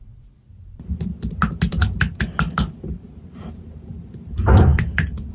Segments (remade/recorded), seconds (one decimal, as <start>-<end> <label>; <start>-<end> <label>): 0.0-5.3 recorded